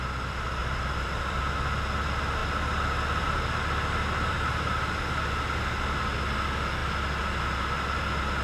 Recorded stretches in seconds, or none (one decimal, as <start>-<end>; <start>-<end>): 0.0-0.6; 1.4-8.4